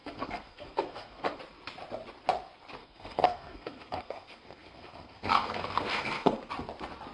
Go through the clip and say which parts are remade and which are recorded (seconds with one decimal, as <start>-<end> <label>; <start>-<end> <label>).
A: 0.0-1.4 remade; 1.4-2.8 recorded; 2.8-6.5 remade; 6.5-7.1 recorded